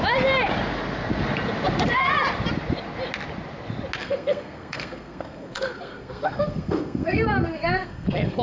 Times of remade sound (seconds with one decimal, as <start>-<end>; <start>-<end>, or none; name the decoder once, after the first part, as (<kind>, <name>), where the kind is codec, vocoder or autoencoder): 4.0-8.4 (codec, SNAC)